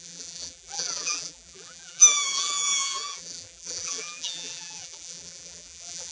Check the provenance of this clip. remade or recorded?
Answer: remade